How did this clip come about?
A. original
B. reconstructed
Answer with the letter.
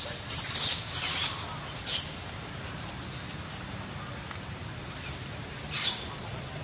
A